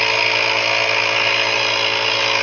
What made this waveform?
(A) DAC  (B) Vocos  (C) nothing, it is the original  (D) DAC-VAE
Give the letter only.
C